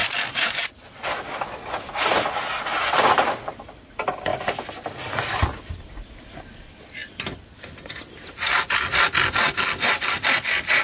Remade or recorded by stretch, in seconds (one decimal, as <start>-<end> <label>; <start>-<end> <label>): 0.0-10.8 recorded